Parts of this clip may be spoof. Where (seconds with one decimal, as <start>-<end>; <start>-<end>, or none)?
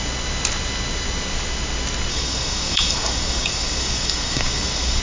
2.1-5.0